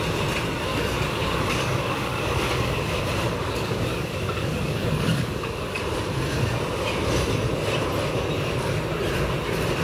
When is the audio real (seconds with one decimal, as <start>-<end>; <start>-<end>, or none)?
0.0-0.7; 2.9-3.4; 5.8-9.8